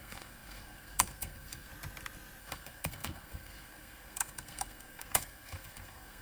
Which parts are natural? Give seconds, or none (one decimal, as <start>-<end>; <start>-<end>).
1.7-2.4